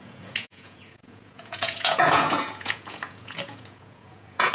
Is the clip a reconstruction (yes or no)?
yes